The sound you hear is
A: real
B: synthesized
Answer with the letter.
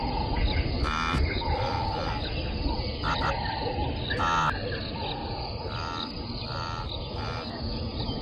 A